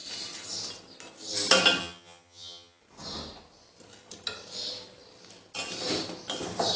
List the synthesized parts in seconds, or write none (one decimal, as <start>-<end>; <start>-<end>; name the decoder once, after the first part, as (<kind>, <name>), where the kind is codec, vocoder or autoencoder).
1.8-2.8 (vocoder, HiFi-GAN)